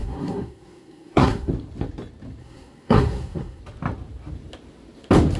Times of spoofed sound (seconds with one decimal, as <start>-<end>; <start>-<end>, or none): 0.0-1.5; 2.4-3.6